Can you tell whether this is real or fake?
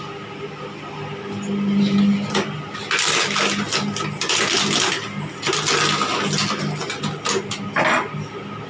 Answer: real